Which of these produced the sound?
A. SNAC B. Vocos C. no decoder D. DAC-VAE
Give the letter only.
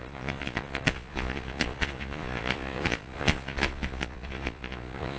B